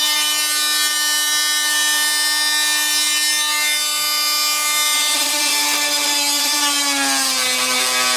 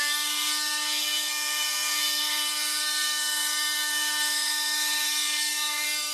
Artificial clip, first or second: second